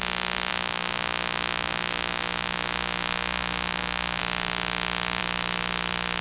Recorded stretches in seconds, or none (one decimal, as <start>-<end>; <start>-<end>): 0.0-0.5; 4.2-6.2

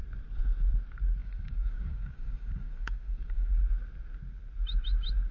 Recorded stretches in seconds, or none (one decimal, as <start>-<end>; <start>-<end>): 0.0-1.2; 3.6-5.3

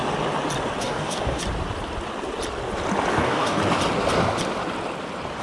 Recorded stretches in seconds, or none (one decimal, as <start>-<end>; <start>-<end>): 0.0-0.8; 1.4-3.1; 3.6-5.4